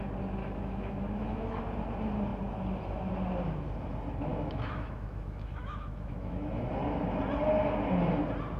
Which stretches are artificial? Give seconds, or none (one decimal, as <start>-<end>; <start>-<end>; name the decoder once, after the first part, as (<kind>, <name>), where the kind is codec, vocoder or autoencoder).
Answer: 0.4-1.6 (autoencoder, DAC-VAE); 4.3-6.6